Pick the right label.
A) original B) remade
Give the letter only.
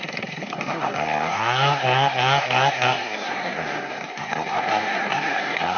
B